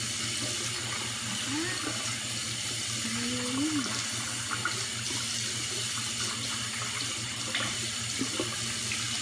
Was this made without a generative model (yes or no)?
yes